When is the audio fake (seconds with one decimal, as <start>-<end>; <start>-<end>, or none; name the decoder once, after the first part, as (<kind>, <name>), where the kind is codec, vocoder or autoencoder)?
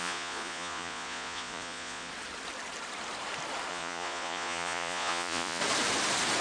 0.0-2.1 (vocoder, Vocos); 3.7-5.6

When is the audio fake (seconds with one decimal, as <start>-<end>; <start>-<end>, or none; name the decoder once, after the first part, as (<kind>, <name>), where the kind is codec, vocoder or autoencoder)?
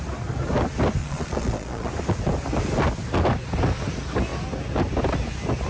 1.0-1.9 (vocoder, Vocos)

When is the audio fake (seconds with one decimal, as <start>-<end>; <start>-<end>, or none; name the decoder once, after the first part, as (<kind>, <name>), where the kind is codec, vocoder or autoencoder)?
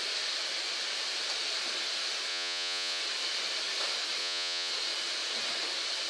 2.3-3.0 (vocoder, Vocos); 4.2-4.7